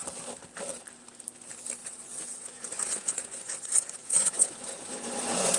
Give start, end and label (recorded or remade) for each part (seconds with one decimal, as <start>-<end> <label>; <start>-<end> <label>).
0.0-1.8 recorded; 1.8-5.6 remade